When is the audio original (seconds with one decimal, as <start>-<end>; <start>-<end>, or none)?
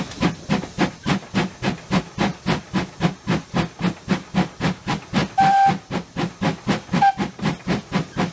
0.0-8.3